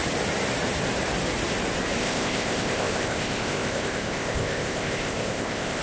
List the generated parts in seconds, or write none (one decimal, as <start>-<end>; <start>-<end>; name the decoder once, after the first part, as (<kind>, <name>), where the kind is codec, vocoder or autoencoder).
2.0-5.8 (codec, ZipCodec)